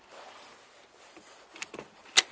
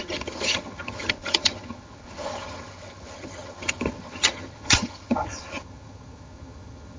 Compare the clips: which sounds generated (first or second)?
second